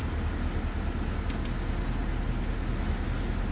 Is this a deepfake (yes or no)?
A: no